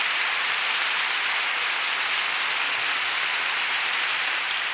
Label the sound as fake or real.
real